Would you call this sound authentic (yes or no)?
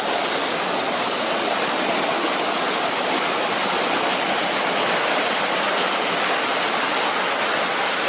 yes